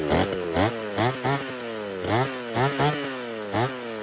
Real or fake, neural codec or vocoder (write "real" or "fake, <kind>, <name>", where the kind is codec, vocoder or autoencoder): real